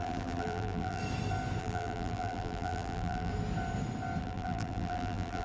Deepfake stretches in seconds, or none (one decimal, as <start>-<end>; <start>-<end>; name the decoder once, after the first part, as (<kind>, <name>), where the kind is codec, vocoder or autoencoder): 0.0-1.0 (vocoder, BigVGAN v2); 1.6-3.3; 4.2-5.4